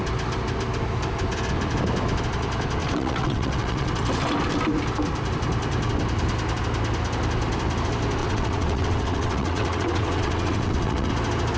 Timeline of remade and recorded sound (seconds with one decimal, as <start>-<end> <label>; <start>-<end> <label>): 0.0-2.8 recorded; 2.8-3.9 remade; 3.9-8.2 recorded; 8.2-11.1 remade; 11.1-11.6 recorded